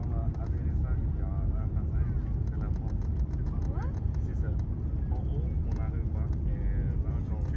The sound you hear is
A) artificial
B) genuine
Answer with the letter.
B